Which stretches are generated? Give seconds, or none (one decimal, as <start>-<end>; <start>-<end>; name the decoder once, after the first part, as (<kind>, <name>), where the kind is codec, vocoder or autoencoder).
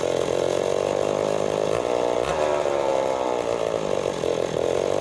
none